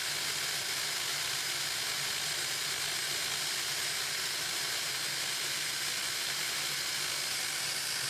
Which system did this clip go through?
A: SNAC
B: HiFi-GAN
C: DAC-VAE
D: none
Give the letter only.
D